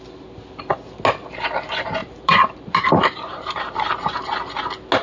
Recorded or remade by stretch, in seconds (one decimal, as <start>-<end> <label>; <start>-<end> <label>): 0.0-2.0 recorded; 2.0-3.8 remade; 3.8-5.0 recorded